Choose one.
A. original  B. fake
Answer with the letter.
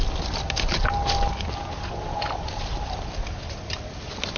A